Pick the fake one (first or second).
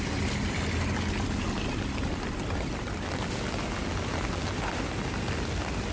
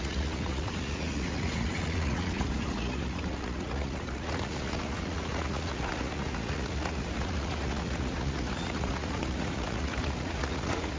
second